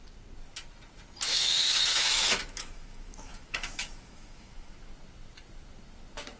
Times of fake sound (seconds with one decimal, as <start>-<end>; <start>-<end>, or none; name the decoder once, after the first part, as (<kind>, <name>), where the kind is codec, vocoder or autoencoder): 1.3-4.8 (autoencoder, DAC-VAE)